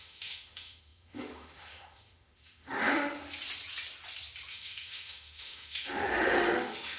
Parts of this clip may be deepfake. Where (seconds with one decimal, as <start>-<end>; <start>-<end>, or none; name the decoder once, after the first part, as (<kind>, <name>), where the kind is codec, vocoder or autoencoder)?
0.0-3.2 (autoencoder, DAC-VAE); 4.5-7.0